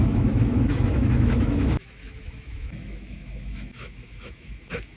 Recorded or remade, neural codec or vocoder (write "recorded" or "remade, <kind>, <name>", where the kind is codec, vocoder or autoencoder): remade, autoencoder, DAC-VAE